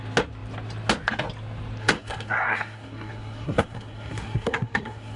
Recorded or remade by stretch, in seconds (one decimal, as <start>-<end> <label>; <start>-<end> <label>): 0.0-1.8 recorded; 1.8-5.2 remade